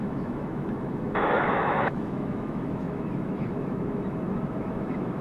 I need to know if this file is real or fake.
fake